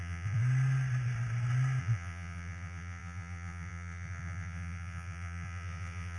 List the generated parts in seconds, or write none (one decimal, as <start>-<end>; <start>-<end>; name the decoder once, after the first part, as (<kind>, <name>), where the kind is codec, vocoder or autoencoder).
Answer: 0.0-0.4 (vocoder, Vocos); 1.8-6.2